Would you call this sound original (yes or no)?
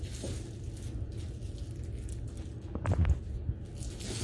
yes